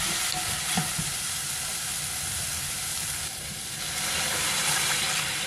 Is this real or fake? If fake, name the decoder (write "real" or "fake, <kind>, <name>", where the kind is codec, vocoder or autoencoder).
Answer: fake, vocoder, BigVGAN v2